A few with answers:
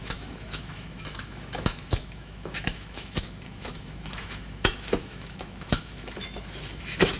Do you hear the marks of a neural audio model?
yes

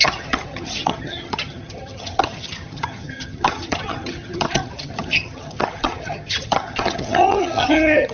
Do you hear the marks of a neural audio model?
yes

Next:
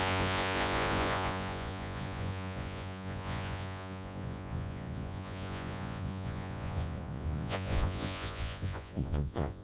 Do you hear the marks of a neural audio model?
yes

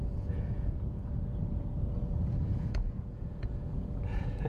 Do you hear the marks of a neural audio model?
yes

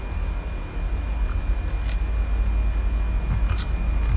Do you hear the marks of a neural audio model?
no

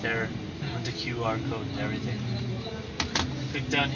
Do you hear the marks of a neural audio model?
no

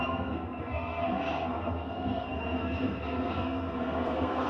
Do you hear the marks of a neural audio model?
yes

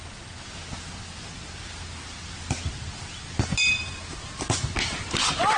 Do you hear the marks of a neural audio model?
no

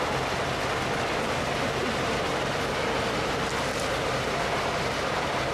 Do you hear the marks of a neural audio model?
no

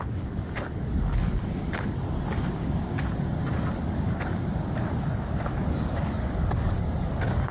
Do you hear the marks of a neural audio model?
yes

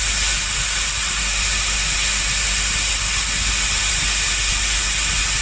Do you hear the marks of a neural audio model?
no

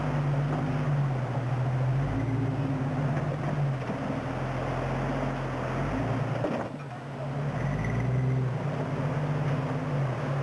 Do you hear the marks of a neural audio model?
no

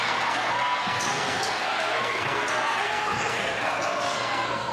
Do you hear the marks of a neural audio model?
yes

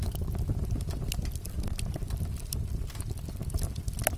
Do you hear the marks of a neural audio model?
no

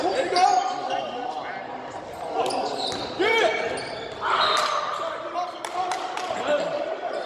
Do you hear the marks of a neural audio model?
no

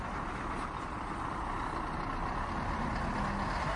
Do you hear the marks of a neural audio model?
no